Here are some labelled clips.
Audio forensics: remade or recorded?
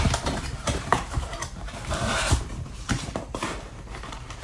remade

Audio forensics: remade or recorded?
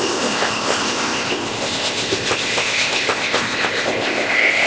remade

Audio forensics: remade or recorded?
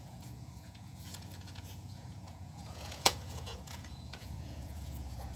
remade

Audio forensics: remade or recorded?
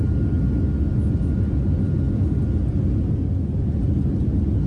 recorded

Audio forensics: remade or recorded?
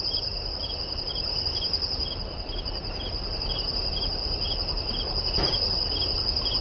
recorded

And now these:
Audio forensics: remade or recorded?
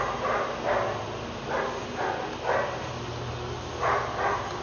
recorded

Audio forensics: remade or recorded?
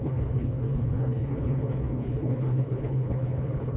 remade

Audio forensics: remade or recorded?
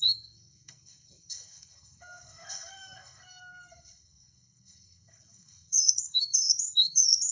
remade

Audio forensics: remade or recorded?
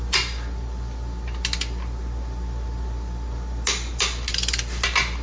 recorded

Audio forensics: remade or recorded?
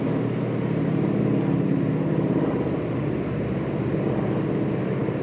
recorded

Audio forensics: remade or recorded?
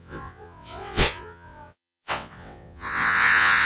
remade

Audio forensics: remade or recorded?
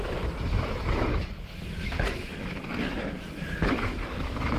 remade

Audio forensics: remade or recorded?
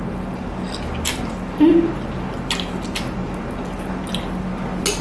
recorded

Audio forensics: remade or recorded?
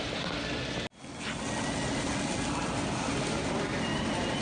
recorded